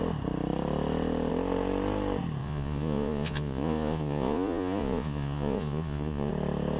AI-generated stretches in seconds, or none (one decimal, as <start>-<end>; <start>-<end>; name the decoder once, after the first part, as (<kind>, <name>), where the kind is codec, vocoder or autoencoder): 2.4-6.3 (vocoder, Vocos)